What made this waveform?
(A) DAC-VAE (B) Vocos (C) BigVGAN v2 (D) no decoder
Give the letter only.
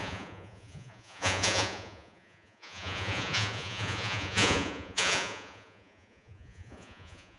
B